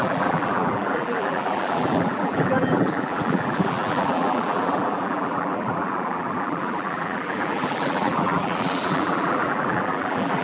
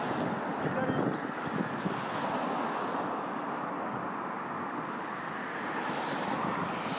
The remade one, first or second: first